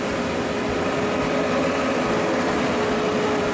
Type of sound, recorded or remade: recorded